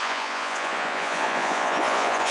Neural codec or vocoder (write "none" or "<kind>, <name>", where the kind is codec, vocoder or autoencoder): vocoder, Vocos